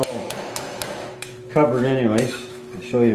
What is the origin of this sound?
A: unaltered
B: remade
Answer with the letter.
B